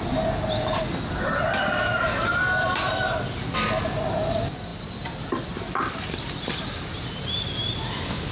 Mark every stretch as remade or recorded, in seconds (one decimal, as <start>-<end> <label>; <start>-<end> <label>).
0.0-8.3 recorded